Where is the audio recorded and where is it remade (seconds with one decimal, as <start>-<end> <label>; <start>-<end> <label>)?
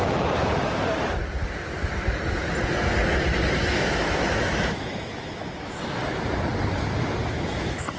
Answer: 0.0-3.6 recorded; 3.6-6.0 remade; 6.0-7.3 recorded; 7.3-8.0 remade